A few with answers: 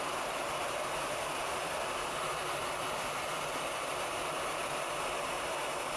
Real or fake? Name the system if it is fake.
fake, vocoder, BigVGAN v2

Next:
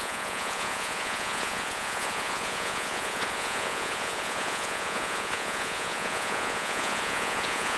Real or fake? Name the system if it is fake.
fake, vocoder, Vocos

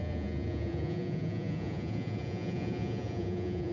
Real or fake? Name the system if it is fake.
fake, vocoder, Vocos